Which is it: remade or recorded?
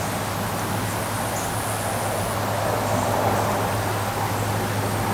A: recorded